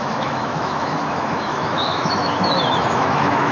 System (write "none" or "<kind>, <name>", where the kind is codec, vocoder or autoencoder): autoencoder, DAC-VAE